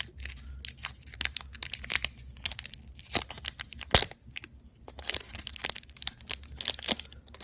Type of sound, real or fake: real